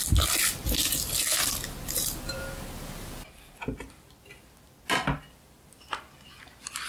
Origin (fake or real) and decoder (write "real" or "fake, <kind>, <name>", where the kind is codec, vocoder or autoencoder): fake, vocoder, BigVGAN v2